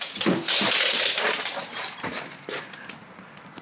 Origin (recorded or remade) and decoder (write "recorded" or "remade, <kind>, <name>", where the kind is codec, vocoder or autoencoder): recorded